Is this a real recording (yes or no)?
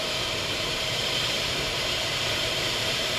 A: no